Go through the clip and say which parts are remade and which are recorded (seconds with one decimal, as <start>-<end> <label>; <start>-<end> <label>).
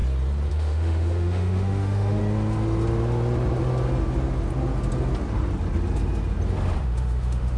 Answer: 0.0-0.5 recorded; 0.5-2.2 remade; 2.2-6.8 recorded; 6.8-7.6 remade